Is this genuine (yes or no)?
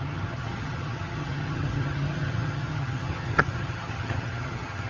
no